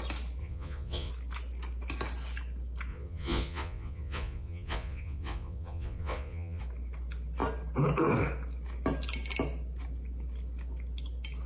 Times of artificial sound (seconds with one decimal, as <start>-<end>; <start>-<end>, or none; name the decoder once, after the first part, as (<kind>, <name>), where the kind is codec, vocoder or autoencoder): 0.4-1.1 (vocoder, Vocos); 2.9-6.6